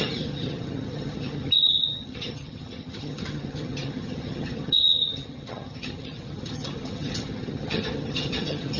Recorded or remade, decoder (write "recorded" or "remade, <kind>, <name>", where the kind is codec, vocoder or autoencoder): remade, vocoder, HiFi-GAN